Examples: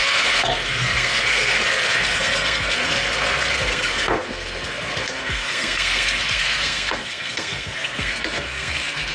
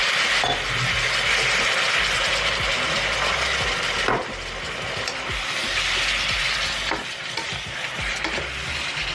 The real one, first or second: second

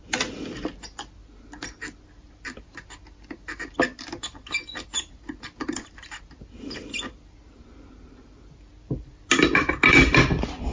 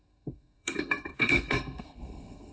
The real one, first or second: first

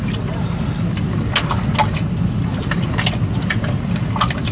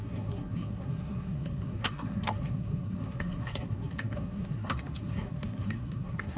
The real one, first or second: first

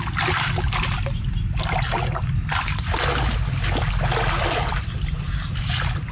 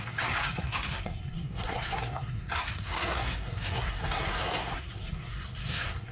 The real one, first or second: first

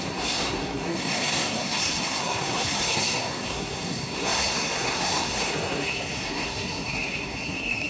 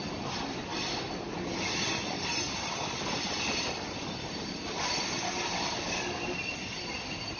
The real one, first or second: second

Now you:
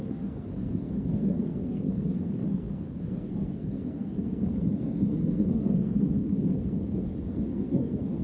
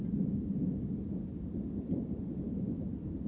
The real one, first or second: second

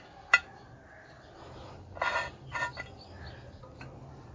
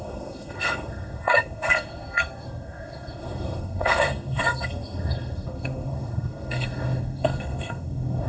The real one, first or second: first